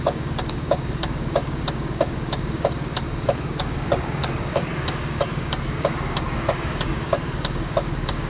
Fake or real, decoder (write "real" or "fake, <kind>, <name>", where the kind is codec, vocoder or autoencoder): fake, codec, DAC